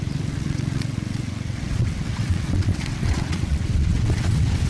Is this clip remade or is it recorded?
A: remade